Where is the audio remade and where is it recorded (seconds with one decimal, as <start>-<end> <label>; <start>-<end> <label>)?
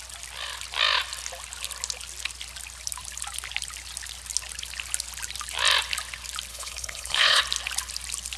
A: 0.0-6.5 recorded; 6.5-7.4 remade; 7.4-8.4 recorded